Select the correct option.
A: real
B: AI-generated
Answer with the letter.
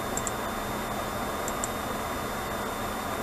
A